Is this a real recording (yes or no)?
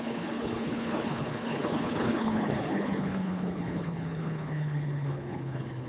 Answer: no